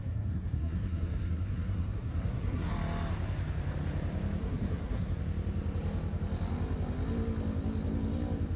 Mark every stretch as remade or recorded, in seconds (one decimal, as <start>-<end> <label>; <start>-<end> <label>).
0.0-2.7 remade; 2.7-4.4 recorded; 4.4-5.2 remade; 5.2-8.6 recorded